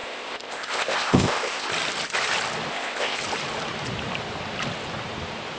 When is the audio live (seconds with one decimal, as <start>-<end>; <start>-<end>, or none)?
1.7-2.7; 3.2-5.6